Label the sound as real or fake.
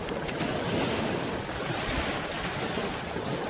real